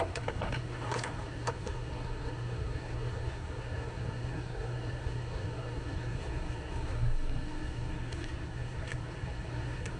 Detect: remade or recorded remade